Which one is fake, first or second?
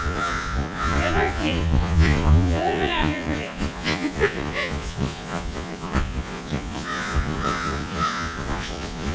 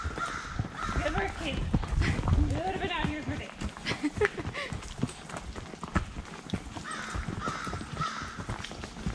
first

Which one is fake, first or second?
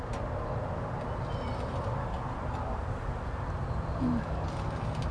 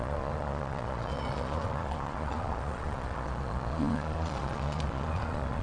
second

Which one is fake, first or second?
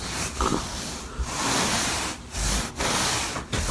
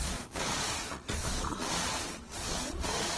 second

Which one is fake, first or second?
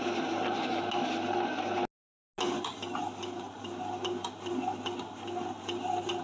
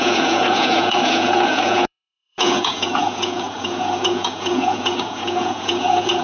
second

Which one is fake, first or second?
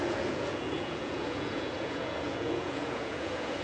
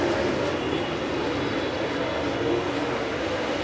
first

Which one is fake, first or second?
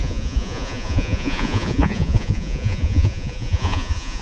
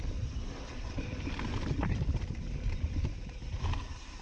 first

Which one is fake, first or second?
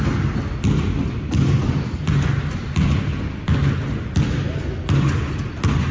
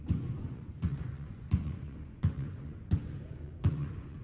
second